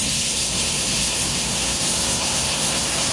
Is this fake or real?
fake